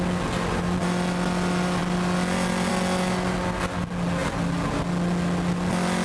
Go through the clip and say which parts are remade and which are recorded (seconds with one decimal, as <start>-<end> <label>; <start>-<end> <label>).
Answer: 0.0-6.0 recorded